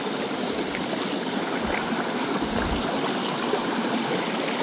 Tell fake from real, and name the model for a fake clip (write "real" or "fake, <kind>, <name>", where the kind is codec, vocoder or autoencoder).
real